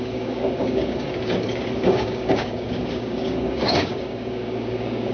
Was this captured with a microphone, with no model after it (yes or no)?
no